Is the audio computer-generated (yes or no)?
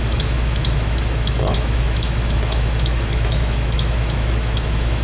yes